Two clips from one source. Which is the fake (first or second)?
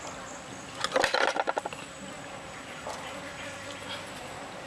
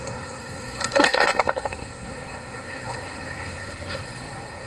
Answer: second